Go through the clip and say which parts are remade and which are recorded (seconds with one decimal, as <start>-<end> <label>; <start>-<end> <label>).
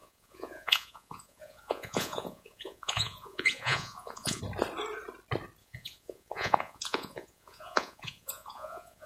0.0-4.4 remade; 4.4-5.6 recorded; 5.6-9.1 remade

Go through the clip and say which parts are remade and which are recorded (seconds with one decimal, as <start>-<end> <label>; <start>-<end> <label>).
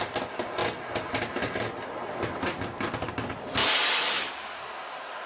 0.0-5.3 recorded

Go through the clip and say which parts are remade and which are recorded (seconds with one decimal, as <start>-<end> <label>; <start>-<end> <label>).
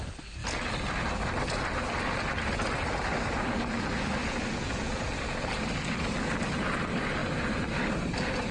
0.0-4.2 recorded; 4.2-5.5 remade; 5.5-8.5 recorded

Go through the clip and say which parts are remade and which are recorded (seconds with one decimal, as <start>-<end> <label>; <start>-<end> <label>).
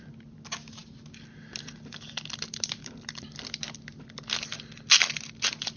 0.0-5.8 recorded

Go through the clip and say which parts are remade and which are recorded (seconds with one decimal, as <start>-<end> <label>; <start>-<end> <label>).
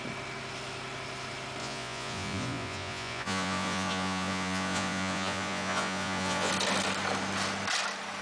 0.0-1.6 recorded; 1.6-6.5 remade; 6.5-8.2 recorded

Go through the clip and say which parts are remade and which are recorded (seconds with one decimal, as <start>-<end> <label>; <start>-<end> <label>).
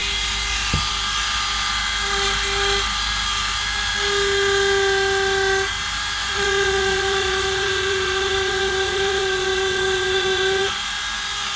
0.0-6.2 recorded; 6.2-11.6 remade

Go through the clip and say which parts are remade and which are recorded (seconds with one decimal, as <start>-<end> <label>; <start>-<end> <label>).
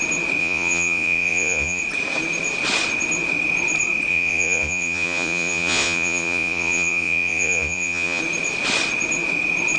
0.0-0.4 recorded; 0.4-1.8 remade; 1.8-4.1 recorded; 4.1-8.2 remade; 8.2-9.8 recorded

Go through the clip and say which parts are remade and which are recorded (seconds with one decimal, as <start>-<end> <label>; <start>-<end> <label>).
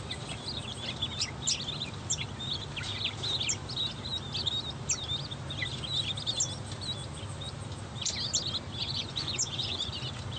0.0-8.8 recorded; 8.8-9.9 remade; 9.9-10.4 recorded